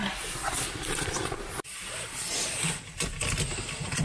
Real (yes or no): no